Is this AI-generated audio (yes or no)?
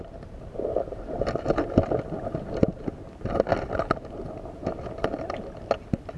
no